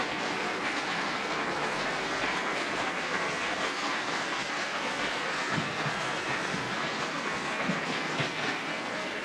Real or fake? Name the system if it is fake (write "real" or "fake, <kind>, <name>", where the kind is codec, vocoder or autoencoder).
fake, codec, SNAC